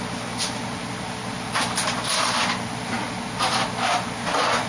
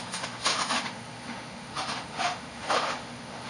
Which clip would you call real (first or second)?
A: first